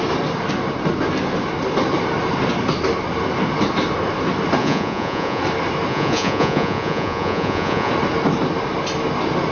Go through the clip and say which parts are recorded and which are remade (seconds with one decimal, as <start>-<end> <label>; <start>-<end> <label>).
0.0-4.6 recorded; 4.6-5.4 remade; 5.4-5.9 recorded; 5.9-7.9 remade; 7.9-9.5 recorded